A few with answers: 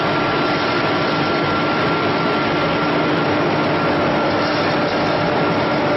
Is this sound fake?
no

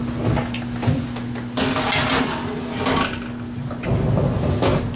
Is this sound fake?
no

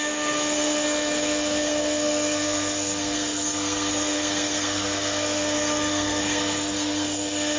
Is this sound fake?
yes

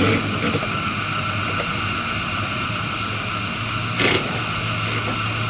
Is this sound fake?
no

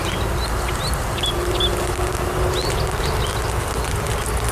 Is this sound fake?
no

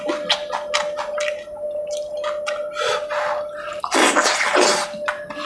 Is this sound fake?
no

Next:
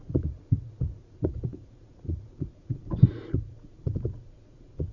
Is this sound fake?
yes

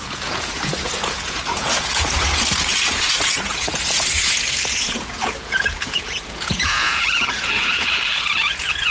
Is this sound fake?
yes